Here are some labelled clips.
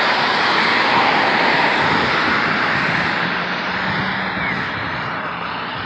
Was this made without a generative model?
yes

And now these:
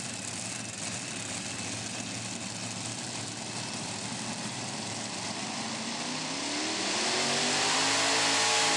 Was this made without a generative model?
yes